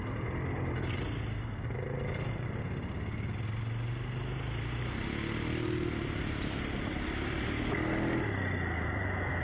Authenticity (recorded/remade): recorded